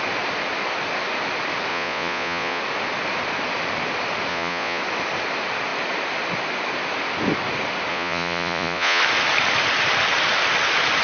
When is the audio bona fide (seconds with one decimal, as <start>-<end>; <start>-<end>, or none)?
0.0-1.7; 2.6-4.3; 4.8-7.9; 9.0-11.0